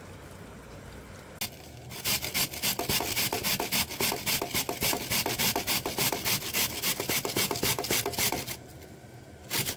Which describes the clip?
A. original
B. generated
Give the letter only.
A